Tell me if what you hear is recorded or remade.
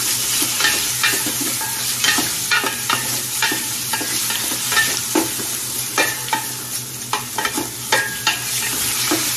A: recorded